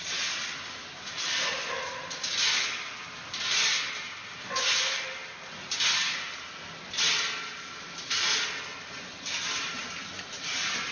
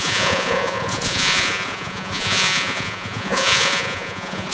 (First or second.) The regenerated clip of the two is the second